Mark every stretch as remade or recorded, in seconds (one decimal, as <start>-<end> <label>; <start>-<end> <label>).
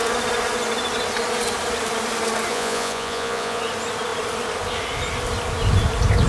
0.0-2.5 recorded; 2.5-3.6 remade; 3.6-6.3 recorded